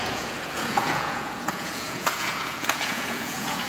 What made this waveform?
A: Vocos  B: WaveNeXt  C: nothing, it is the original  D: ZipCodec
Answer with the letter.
A